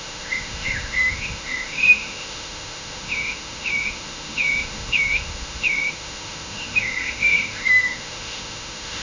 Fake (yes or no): yes